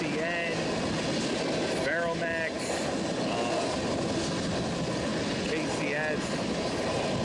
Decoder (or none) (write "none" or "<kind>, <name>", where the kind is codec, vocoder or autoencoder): none